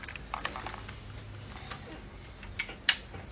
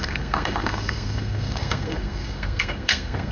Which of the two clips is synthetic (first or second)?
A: second